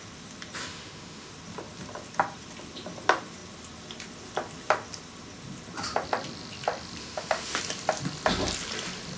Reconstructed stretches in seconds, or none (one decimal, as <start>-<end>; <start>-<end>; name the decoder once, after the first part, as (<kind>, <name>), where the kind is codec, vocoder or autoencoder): 0.7-1.3 (autoencoder, DAC-VAE); 7.0-7.6